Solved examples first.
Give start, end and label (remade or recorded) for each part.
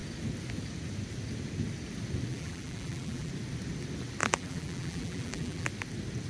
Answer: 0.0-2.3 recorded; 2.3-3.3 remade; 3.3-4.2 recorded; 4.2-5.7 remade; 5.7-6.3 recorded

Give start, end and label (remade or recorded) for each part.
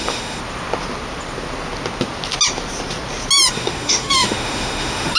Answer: 0.0-0.4 remade; 0.4-3.5 recorded; 3.5-5.2 remade